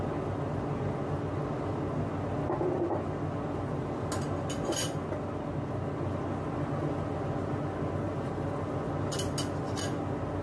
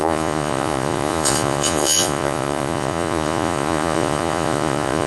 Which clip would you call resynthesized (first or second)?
second